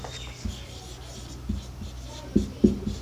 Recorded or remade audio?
recorded